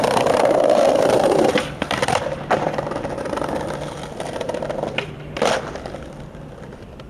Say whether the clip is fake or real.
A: fake